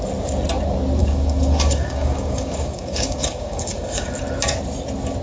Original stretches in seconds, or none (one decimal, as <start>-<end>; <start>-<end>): 0.0-1.0; 4.1-5.2